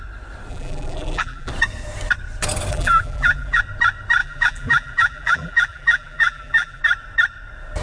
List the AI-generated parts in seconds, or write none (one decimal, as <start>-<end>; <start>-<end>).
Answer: 0.5-1.5; 2.7-3.6; 4.2-6.8